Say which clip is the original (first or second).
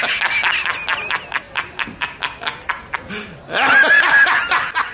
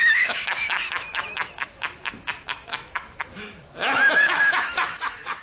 first